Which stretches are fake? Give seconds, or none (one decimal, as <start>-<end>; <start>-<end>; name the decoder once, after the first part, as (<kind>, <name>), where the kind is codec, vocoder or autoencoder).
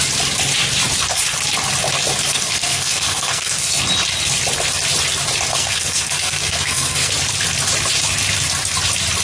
2.3-3.8 (codec, SNAC); 5.5-7.1